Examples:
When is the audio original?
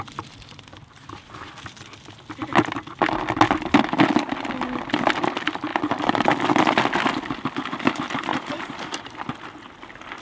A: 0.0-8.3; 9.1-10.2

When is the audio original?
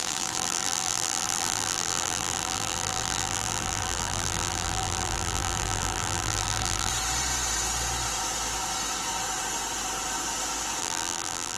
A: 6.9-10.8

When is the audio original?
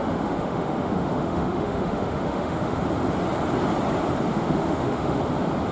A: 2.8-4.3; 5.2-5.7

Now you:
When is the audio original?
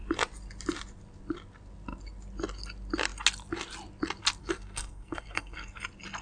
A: 0.0-4.4; 5.8-6.2